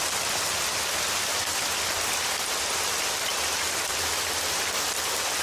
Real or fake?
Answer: real